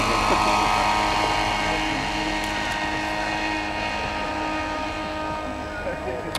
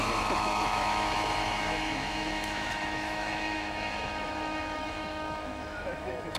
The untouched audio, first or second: first